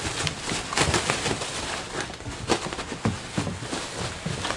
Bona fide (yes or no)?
yes